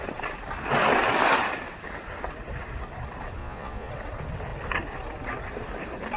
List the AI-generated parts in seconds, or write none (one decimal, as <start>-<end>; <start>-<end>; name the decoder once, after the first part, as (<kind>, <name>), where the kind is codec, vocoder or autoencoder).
3.4-3.9 (vocoder, Vocos)